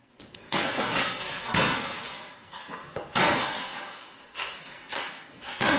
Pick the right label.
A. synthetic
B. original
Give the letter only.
A